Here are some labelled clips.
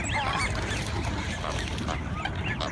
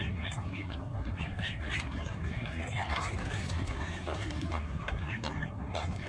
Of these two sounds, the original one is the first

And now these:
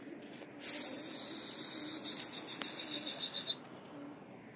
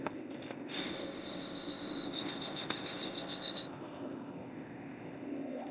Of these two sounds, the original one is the first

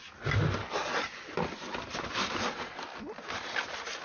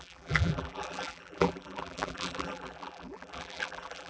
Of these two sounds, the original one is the first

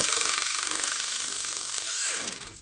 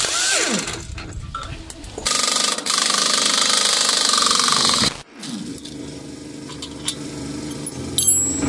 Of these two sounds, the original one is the second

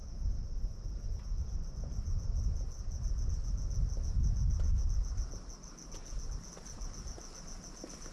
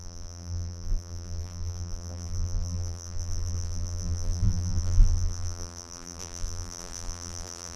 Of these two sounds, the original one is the first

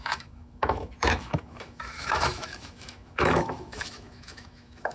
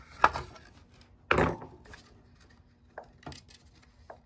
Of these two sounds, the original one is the second